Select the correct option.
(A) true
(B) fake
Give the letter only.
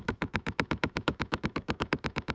B